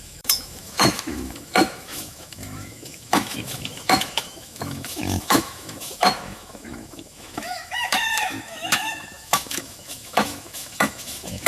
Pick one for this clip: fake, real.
fake